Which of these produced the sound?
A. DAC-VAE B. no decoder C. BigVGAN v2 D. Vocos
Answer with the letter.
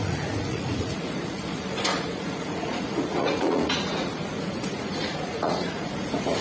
D